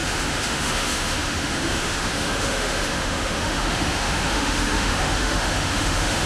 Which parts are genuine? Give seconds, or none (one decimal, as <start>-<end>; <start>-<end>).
none